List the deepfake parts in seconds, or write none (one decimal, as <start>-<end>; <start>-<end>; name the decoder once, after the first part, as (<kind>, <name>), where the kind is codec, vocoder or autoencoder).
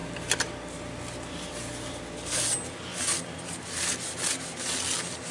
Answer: 0.0-0.5 (vocoder, BigVGAN v2)